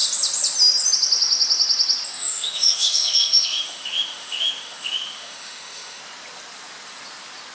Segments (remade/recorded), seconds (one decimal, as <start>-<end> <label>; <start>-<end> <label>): 0.0-2.1 recorded; 2.1-6.0 remade; 6.0-7.5 recorded